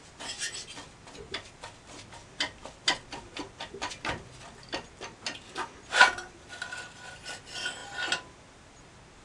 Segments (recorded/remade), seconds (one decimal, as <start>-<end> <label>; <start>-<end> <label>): 0.0-9.2 recorded

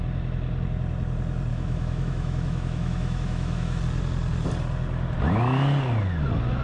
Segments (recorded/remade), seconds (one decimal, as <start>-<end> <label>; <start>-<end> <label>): 0.0-1.5 recorded; 1.5-3.8 remade; 3.8-6.6 recorded

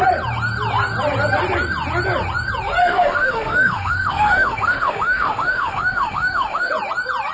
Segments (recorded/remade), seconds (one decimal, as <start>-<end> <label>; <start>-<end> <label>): 0.0-2.8 recorded; 2.8-6.7 remade; 6.7-7.3 recorded

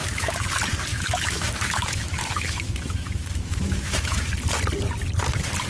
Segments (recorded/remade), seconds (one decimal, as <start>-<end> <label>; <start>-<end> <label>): 0.0-0.5 remade; 0.5-0.9 recorded; 0.9-4.3 remade; 4.3-5.7 recorded

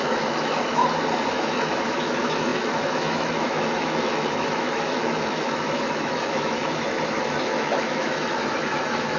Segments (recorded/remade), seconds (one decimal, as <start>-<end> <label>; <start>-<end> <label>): 0.0-0.8 remade; 0.8-1.3 recorded; 1.3-9.2 remade

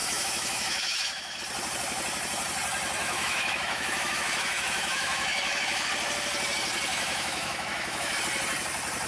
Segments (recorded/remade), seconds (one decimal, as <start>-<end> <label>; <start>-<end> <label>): 0.0-1.4 remade; 1.4-3.0 recorded; 3.0-5.9 remade; 5.9-6.9 recorded; 6.9-8.2 remade; 8.2-9.1 recorded

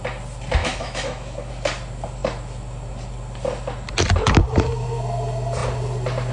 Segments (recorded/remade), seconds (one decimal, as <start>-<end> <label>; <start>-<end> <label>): 0.0-0.6 recorded; 0.6-1.5 remade; 1.5-6.3 recorded